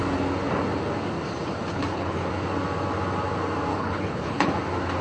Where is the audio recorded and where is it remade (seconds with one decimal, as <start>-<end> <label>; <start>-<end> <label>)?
0.0-1.7 recorded; 1.7-2.3 remade; 2.3-3.7 recorded; 3.7-4.5 remade; 4.5-5.0 recorded